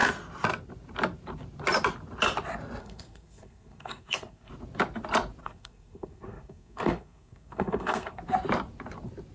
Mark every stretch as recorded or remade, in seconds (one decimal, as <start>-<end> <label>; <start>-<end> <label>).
0.0-2.8 recorded; 2.8-4.5 remade; 4.5-5.4 recorded; 5.4-8.2 remade; 8.2-9.3 recorded